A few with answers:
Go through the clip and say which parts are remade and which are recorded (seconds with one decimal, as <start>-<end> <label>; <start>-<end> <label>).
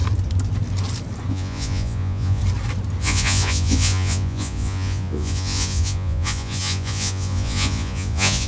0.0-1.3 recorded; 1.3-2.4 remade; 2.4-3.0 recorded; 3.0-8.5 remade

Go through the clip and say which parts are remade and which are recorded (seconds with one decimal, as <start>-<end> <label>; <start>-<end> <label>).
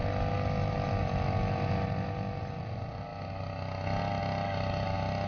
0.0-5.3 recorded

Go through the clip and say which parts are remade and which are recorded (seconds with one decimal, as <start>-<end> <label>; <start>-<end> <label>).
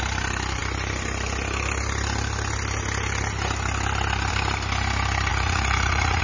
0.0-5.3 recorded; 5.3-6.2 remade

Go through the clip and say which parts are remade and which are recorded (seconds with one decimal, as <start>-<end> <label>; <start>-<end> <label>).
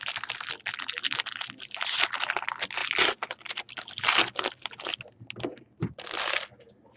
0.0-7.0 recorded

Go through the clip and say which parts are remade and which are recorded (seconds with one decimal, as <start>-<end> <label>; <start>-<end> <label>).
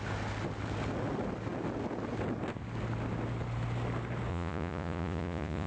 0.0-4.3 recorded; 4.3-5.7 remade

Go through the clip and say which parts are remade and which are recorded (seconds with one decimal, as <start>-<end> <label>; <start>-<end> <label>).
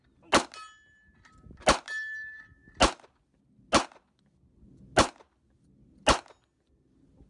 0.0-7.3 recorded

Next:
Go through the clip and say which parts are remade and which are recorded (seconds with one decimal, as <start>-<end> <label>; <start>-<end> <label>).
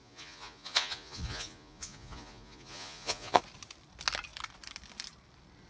0.0-3.4 remade; 3.4-5.7 recorded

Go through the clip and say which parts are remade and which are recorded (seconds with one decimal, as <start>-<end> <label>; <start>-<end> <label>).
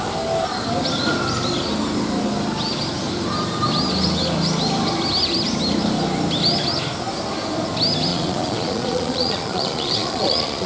0.0-8.1 recorded; 8.1-10.7 remade